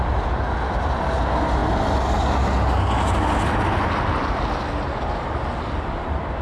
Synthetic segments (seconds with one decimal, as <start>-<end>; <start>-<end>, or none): none